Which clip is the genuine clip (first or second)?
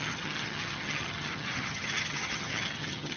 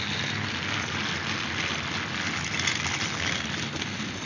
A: second